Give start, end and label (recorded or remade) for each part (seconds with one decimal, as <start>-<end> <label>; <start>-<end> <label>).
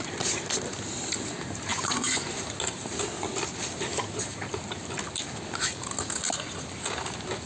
0.0-1.7 recorded; 1.7-2.4 remade; 2.4-7.5 recorded